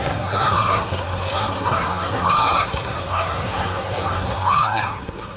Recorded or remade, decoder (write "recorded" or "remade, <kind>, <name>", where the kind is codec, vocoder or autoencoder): remade, codec, SNAC